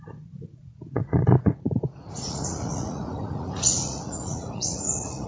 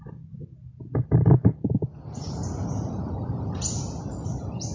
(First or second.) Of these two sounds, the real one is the second